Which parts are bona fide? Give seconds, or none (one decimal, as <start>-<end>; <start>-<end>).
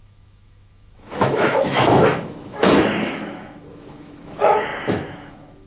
none